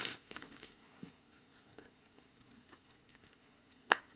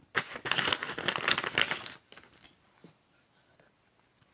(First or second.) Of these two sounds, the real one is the second